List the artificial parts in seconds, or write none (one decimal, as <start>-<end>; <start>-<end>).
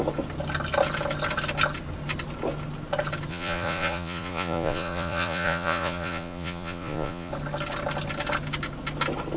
3.3-7.3